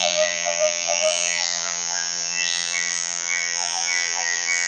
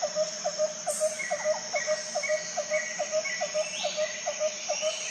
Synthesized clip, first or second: first